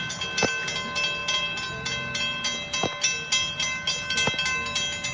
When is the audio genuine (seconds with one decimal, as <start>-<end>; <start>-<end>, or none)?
0.0-5.1